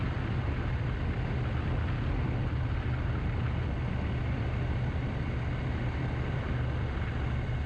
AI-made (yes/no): no